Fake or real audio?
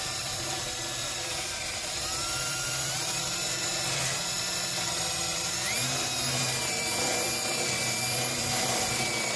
fake